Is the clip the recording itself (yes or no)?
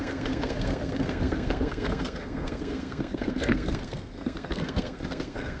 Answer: no